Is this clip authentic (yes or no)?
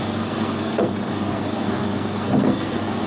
no